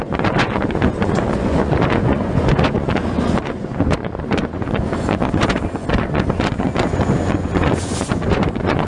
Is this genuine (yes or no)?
no